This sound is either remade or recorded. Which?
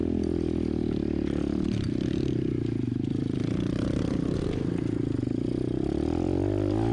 recorded